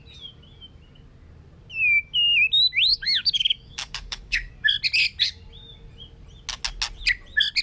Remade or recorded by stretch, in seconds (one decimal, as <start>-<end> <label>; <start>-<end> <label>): 0.0-2.9 recorded; 2.9-4.5 remade; 4.5-7.6 recorded